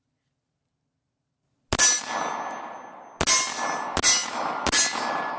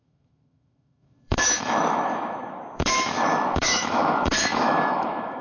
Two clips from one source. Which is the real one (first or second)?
first